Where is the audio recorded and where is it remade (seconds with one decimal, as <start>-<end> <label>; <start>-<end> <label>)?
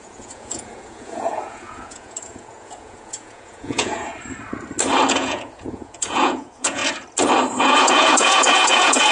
0.0-4.1 remade; 4.1-5.1 recorded; 5.1-6.8 remade; 6.8-7.6 recorded; 7.6-9.1 remade